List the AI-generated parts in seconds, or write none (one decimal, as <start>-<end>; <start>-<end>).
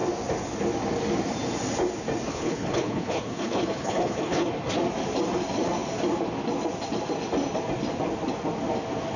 2.3-4.5